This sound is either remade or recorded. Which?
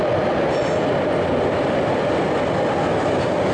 recorded